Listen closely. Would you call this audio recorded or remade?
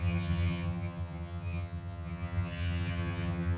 remade